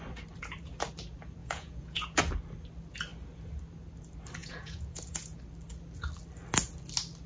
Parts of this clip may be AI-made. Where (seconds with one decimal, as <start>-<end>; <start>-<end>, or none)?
1.4-2.2; 4.4-5.4